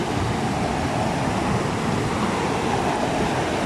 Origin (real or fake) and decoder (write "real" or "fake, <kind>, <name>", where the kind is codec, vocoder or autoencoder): real